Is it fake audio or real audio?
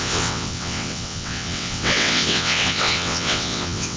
fake